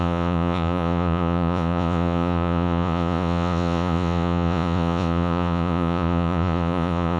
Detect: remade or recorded remade